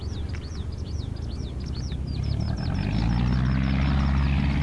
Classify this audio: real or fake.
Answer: real